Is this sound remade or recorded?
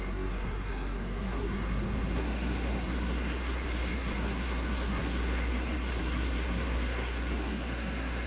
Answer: remade